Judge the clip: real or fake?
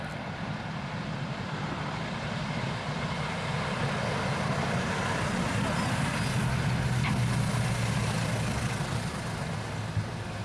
real